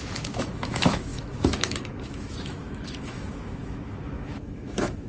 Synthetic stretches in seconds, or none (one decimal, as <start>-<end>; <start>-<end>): 0.0-5.1